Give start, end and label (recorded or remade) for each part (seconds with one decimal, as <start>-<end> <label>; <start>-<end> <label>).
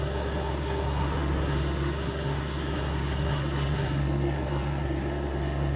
0.0-5.8 remade